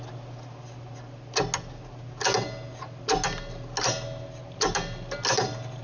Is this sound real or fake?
real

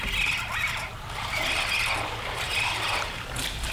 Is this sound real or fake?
real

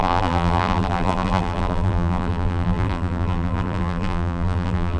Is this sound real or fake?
fake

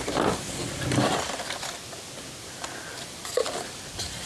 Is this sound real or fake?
fake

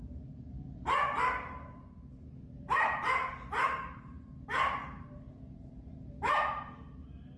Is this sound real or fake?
fake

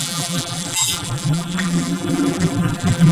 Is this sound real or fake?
fake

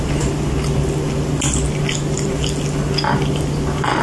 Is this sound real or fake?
real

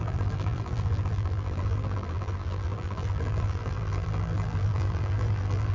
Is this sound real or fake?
fake